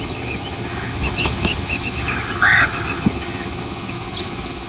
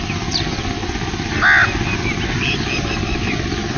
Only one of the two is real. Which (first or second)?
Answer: second